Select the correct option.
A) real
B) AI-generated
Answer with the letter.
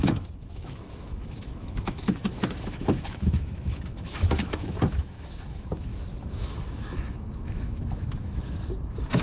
B